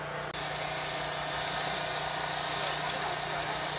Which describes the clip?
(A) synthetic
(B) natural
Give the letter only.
B